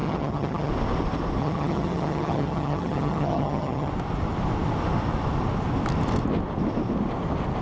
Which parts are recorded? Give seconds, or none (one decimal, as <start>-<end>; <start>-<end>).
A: 0.7-1.4; 3.9-7.6